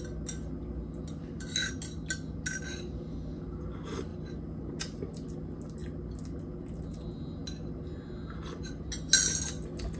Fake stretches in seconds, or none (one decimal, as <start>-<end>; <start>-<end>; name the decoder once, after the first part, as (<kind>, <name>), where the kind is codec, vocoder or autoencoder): none